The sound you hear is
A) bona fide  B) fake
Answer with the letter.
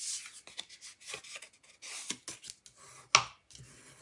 A